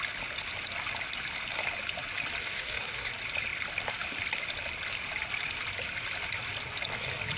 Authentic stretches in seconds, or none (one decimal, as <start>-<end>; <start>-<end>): 0.0-2.4; 3.1-7.4